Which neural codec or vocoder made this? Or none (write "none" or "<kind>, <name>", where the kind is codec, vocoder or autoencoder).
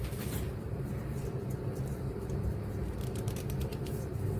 vocoder, BigVGAN v2